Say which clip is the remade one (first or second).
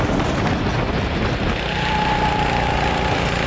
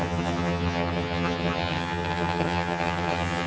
second